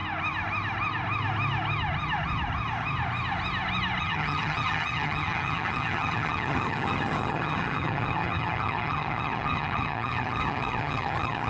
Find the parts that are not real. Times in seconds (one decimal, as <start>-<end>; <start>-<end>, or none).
4.0-11.5